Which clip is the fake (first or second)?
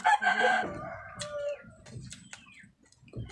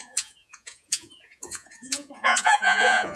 second